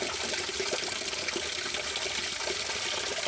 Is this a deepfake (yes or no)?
no